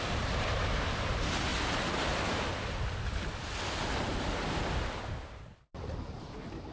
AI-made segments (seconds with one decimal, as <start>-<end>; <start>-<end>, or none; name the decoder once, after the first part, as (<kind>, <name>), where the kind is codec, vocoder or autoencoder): 0.0-1.5 (vocoder, BigVGAN v2); 5.3-6.7